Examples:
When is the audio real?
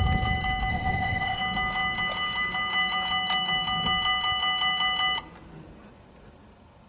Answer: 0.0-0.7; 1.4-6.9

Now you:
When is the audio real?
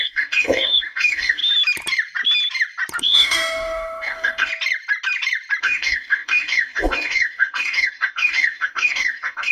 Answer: 1.4-3.0; 4.5-5.6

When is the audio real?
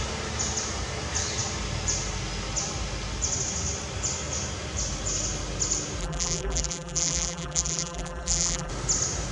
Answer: 0.0-6.0; 8.7-9.3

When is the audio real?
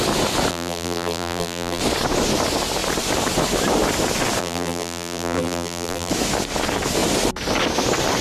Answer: 0.0-0.5; 1.8-4.4; 6.1-8.2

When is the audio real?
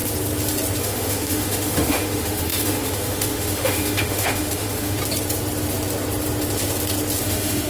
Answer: 0.0-0.8; 5.0-7.2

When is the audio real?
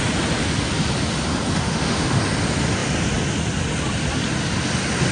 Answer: 0.0-1.6; 2.2-5.1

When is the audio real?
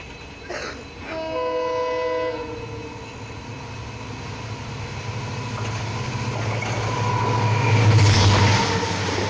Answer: 0.0-9.3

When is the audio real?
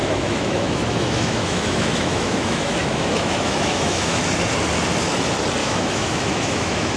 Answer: 4.2-5.6